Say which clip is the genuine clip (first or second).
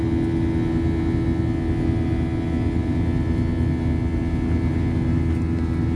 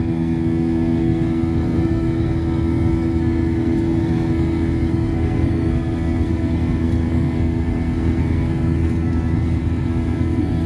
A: first